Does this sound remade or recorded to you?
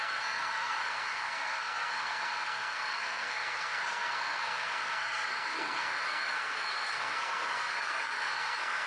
remade